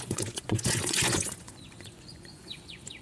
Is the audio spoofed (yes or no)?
yes